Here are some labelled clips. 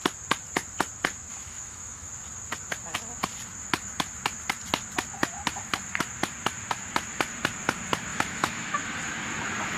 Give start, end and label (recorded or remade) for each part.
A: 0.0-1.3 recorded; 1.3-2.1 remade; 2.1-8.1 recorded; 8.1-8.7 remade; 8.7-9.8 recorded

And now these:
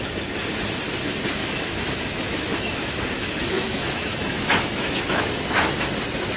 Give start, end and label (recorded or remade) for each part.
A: 0.0-1.4 recorded; 1.4-5.2 remade; 5.2-6.4 recorded

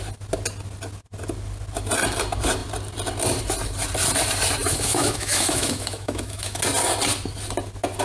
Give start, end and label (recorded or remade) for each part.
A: 0.0-4.6 recorded; 4.6-6.6 remade; 6.6-8.0 recorded

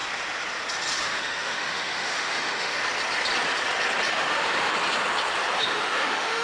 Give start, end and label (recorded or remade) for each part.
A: 0.0-1.0 recorded; 1.0-2.8 remade; 2.8-4.1 recorded; 4.1-4.7 remade; 4.7-5.6 recorded; 5.6-6.4 remade